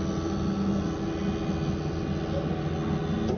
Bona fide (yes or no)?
yes